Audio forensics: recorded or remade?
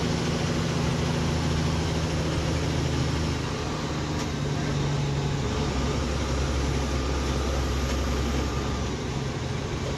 recorded